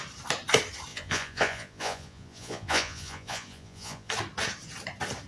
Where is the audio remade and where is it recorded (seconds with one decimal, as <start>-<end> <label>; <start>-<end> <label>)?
0.0-0.9 recorded; 0.9-4.1 remade; 4.1-5.3 recorded